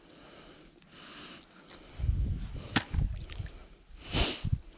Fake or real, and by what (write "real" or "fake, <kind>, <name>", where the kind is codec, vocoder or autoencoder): real